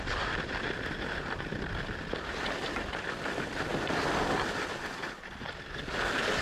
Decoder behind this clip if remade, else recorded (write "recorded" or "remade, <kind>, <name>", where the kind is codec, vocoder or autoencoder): recorded